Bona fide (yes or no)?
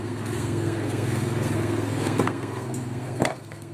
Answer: no